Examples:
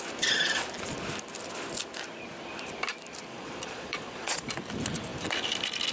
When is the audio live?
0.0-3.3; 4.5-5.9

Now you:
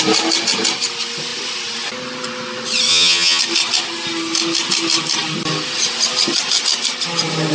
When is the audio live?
0.0-2.9; 3.4-7.5

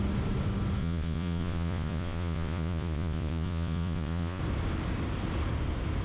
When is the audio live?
0.0-0.8; 4.4-6.0

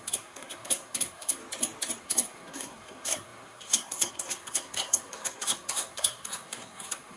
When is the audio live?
1.4-2.0

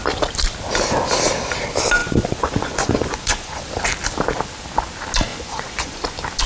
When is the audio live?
0.0-2.0; 3.7-5.3; 6.0-6.5